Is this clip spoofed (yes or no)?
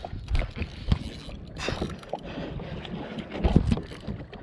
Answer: no